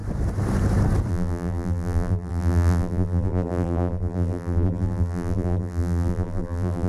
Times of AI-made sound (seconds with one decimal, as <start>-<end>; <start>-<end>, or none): 1.1-6.9